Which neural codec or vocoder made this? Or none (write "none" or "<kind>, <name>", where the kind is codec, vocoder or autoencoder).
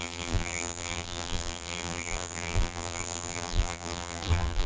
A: vocoder, BigVGAN v2